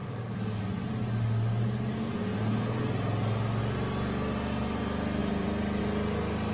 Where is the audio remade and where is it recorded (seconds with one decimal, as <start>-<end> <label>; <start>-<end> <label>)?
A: 0.0-0.9 remade; 0.9-5.2 recorded; 5.2-5.8 remade; 5.8-6.5 recorded